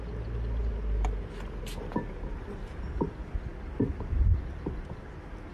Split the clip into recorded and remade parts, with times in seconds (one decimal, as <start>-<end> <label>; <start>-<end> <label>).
0.0-5.5 recorded